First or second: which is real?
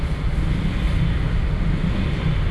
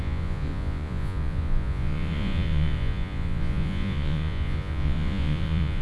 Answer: first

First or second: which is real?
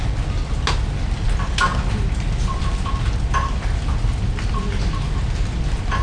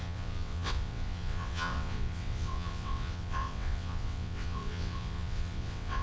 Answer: first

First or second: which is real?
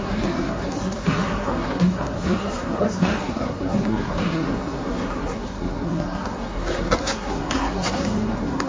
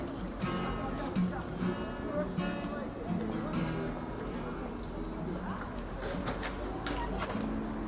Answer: second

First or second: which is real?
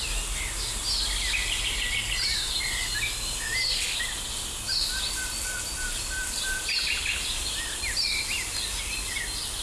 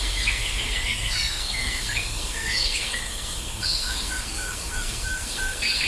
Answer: first